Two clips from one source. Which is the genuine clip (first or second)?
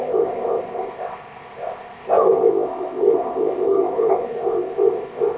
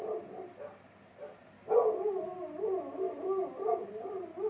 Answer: second